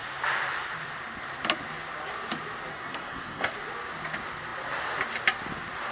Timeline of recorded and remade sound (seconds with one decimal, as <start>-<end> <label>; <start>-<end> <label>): 0.0-2.7 recorded; 2.7-3.5 remade; 3.5-5.9 recorded